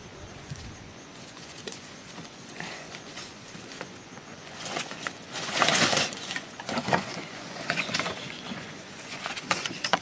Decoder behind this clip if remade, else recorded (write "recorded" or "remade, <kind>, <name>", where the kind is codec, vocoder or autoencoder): remade, vocoder, Vocos